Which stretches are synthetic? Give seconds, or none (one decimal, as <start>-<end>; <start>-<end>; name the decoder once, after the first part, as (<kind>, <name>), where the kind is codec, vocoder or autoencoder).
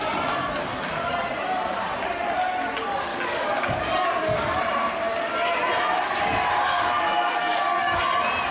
3.1-4.6 (codec, DAC); 6.7-8.0